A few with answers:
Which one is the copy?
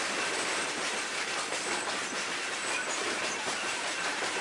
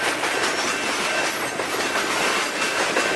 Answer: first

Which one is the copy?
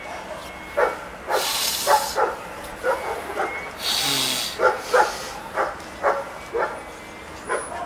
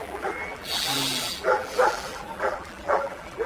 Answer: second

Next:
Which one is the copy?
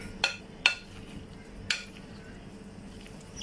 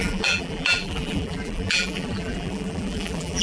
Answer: second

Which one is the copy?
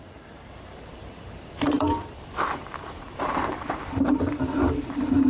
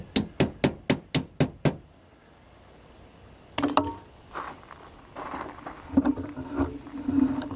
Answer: first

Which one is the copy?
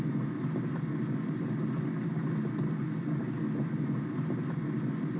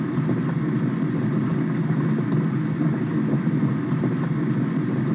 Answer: second